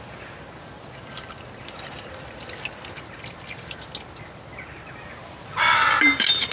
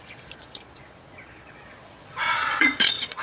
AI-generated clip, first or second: second